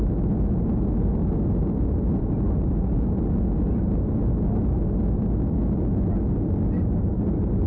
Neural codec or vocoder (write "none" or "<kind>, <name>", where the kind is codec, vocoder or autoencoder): none